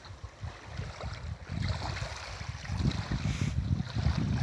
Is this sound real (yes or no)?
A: yes